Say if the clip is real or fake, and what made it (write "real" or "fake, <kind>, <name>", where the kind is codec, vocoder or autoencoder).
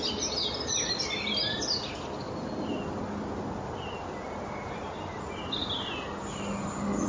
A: real